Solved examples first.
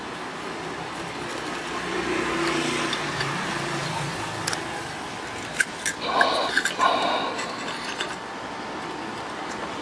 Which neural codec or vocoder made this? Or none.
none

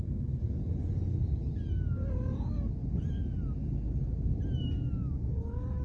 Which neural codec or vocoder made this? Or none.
none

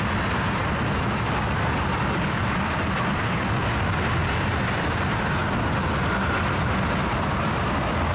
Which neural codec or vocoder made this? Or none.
none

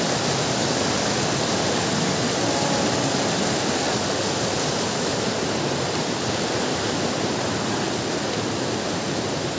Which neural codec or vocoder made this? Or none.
none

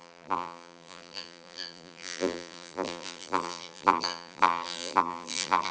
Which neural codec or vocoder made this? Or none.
vocoder, BigVGAN v2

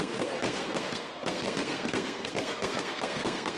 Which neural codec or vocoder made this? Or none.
codec, SNAC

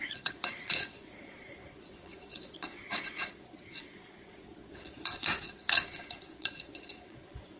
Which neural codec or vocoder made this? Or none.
vocoder, Vocos